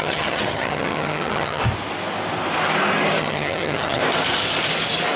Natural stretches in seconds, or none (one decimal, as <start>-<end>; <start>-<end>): 1.6-3.2; 4.0-5.2